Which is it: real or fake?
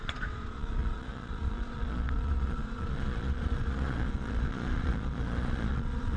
fake